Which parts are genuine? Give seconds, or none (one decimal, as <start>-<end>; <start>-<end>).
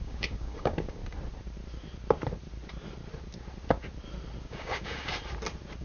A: 1.0-4.4; 5.1-5.8